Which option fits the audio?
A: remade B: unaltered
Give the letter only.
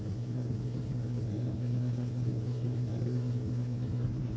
A